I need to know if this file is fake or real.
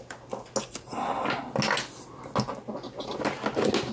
real